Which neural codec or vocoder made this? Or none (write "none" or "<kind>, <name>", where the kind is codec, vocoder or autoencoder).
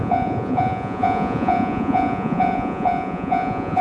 vocoder, Vocos